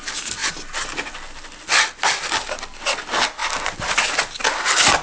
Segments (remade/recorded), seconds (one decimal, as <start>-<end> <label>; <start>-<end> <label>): 0.0-5.0 recorded